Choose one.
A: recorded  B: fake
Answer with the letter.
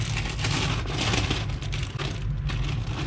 A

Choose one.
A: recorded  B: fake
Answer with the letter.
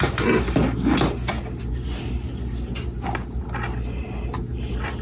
A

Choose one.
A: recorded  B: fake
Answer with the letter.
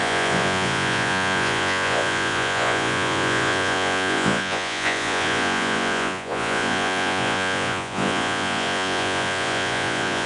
B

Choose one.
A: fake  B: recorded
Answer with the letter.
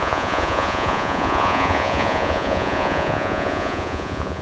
A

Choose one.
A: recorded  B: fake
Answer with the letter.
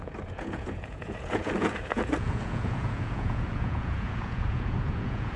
B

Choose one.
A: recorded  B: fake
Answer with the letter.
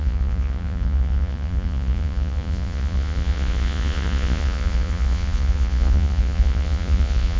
B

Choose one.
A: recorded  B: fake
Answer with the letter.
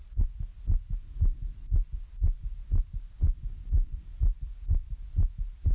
A